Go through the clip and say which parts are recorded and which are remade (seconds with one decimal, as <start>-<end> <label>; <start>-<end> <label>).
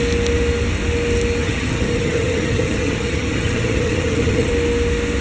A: 0.0-1.4 recorded; 1.4-4.5 remade; 4.5-5.2 recorded